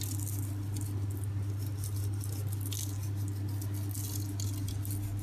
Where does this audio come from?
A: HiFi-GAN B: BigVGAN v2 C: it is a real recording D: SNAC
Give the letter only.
C